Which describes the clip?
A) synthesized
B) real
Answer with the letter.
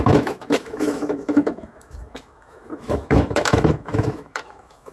A